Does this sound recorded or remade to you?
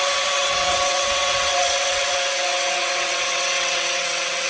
remade